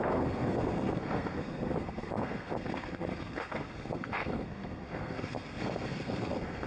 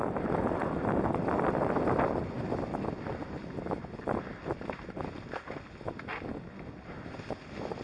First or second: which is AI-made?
first